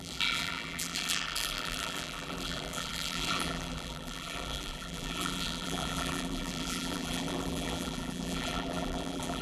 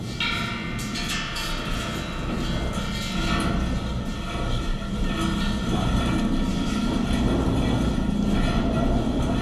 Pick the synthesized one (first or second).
first